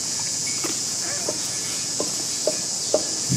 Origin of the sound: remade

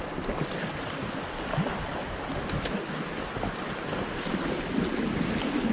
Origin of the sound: recorded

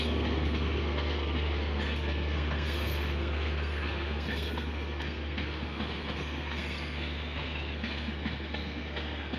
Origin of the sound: remade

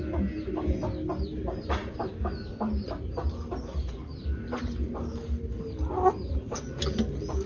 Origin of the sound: recorded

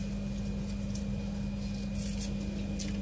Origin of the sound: recorded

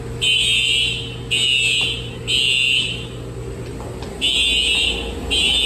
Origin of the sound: recorded